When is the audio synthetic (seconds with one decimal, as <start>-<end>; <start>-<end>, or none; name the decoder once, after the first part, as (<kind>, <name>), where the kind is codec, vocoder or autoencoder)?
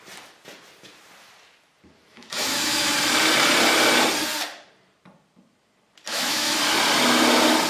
2.1-2.9 (autoencoder, DAC-VAE); 6.1-6.6